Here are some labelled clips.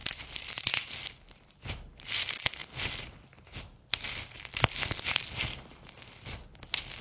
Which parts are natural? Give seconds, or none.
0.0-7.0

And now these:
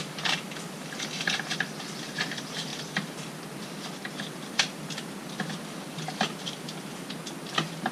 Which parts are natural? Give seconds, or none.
0.0-7.9

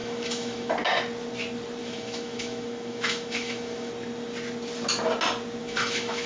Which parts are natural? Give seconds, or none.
0.7-1.8; 3.9-5.6

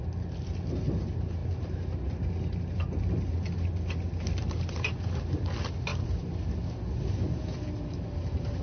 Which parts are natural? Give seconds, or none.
0.0-8.6

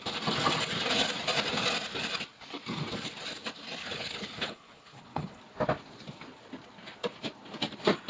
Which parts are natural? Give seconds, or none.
0.0-3.8; 5.4-8.1

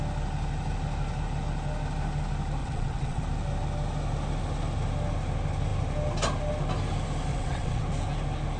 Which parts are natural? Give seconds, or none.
0.0-2.6; 3.2-7.3; 7.8-8.6

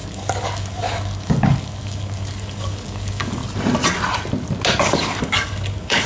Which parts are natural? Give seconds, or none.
3.4-4.8

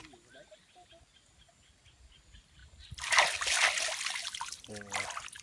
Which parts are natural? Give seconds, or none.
0.0-5.4